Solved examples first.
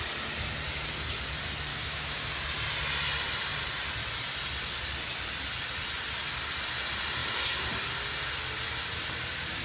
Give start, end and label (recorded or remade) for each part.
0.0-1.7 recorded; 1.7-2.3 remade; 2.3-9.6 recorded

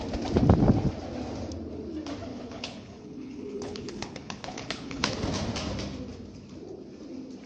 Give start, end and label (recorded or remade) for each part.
0.0-2.3 recorded; 2.3-5.1 remade; 5.1-7.5 recorded

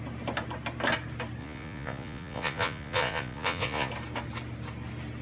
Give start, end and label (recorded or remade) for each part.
0.0-1.4 recorded; 1.4-3.9 remade; 3.9-5.2 recorded

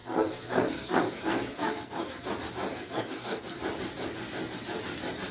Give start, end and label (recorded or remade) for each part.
0.0-2.3 remade; 2.3-2.7 recorded; 2.7-3.6 remade; 3.6-5.3 recorded